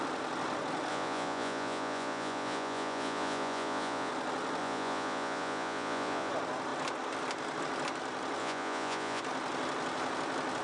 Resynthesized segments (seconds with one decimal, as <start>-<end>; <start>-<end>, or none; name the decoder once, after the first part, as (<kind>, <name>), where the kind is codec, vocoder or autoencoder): 0.9-4.1 (vocoder, Vocos); 4.6-6.3; 8.4-9.2